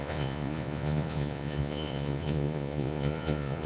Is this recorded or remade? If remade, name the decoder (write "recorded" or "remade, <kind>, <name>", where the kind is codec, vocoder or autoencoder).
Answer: remade, vocoder, Vocos